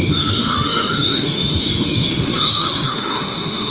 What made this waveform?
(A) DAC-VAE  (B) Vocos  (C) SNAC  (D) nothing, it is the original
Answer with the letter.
A